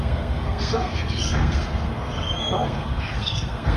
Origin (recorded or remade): remade